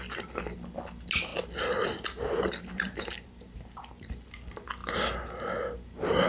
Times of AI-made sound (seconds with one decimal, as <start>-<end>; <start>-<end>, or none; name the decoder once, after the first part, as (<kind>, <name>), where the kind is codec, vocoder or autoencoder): 1.3-4.1 (vocoder, BigVGAN v2)